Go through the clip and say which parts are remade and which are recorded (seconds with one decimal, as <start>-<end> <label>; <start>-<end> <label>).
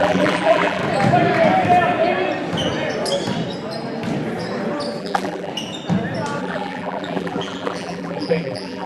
0.0-0.8 remade; 0.8-5.0 recorded; 5.0-5.5 remade; 5.5-6.4 recorded; 6.4-8.9 remade